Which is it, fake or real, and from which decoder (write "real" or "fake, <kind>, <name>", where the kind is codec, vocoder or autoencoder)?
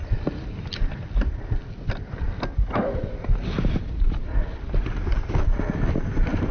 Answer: real